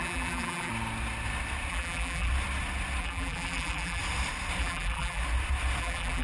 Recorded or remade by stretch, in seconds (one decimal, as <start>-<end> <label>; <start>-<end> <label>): 0.0-0.7 remade; 0.7-1.7 recorded; 1.7-2.3 remade; 2.3-3.0 recorded; 3.0-4.0 remade; 4.0-4.6 recorded; 4.6-5.2 remade; 5.2-5.8 recorded; 5.8-6.2 remade